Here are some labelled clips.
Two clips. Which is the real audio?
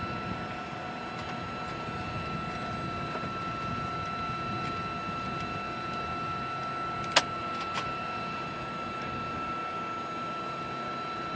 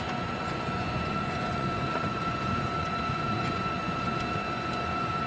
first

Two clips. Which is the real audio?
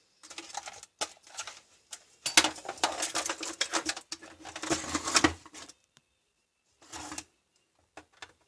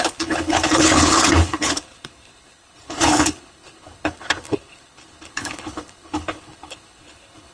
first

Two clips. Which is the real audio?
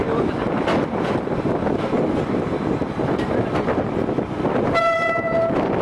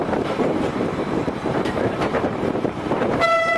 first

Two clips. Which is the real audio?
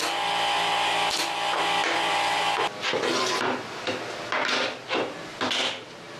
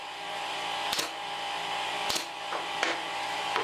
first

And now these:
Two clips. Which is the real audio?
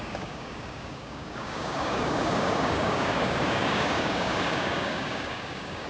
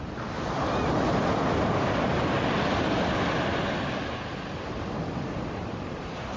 second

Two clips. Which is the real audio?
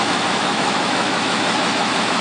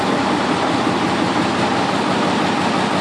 second